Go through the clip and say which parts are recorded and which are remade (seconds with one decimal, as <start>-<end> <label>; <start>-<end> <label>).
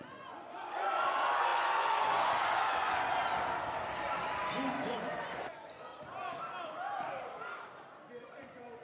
0.0-3.2 remade; 3.2-4.7 recorded; 4.7-5.9 remade; 5.9-8.1 recorded; 8.1-8.8 remade